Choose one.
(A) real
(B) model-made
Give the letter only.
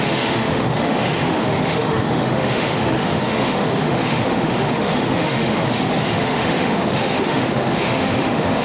B